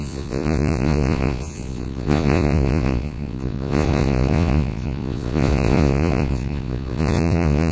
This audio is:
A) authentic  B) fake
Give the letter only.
B